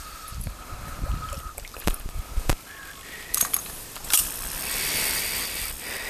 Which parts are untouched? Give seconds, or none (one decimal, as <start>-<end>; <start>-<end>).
none